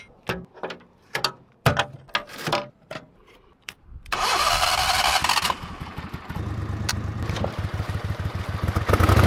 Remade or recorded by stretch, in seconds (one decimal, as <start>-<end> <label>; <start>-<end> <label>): 0.0-2.2 recorded; 2.2-4.5 remade; 4.5-6.9 recorded; 6.9-8.4 remade; 8.4-9.3 recorded